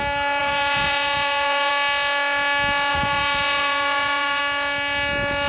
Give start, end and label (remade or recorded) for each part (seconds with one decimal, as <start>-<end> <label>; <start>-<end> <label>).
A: 0.0-0.4 recorded; 0.4-1.7 remade; 1.7-2.9 recorded; 2.9-4.4 remade; 4.4-5.5 recorded